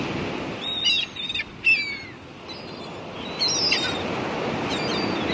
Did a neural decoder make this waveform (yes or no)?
no